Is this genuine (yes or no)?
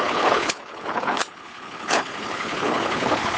no